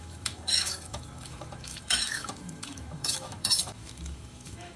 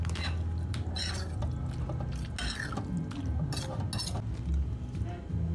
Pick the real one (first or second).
second